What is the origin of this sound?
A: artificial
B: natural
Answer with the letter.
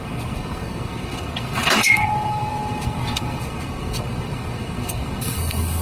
A